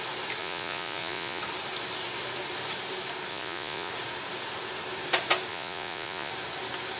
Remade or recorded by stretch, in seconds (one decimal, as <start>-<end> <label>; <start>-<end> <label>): 0.0-0.4 recorded; 0.4-1.4 remade; 1.4-3.3 recorded; 3.3-3.9 remade; 3.9-5.5 recorded; 5.5-6.3 remade; 6.3-7.0 recorded